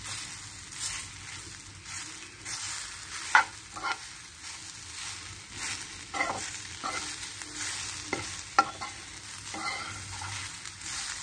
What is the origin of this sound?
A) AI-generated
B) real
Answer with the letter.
B